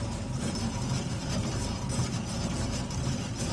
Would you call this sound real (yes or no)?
no